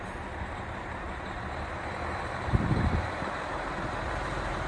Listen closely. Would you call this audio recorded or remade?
remade